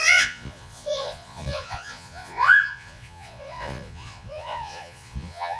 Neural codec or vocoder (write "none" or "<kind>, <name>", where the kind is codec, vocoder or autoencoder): vocoder, Vocos